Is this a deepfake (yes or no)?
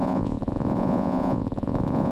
yes